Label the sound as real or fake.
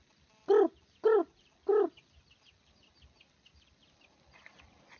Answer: real